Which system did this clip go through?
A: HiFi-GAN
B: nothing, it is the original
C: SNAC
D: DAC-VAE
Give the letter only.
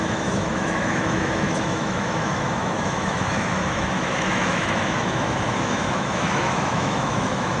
D